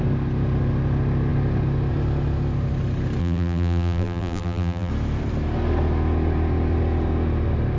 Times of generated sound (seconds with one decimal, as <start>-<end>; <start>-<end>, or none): 3.2-4.9